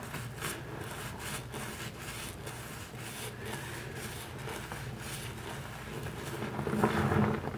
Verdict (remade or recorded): recorded